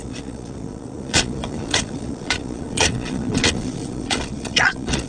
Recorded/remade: remade